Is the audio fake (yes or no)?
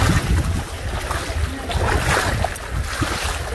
no